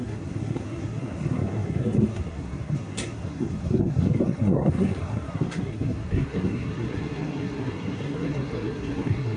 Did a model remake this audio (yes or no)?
yes